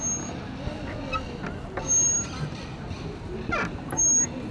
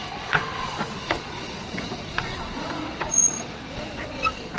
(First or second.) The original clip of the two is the first